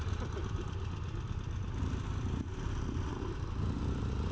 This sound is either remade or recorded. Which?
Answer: recorded